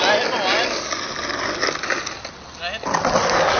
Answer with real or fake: real